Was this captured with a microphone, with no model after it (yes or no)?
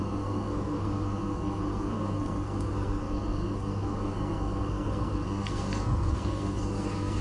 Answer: no